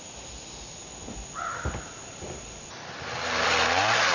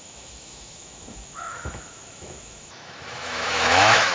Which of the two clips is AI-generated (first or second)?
second